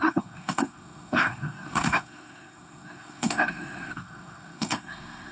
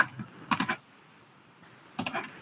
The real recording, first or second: second